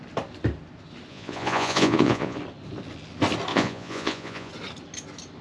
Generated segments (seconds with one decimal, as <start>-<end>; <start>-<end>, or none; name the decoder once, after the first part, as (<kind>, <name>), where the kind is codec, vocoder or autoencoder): 1.1-2.4 (vocoder, Vocos); 3.5-4.5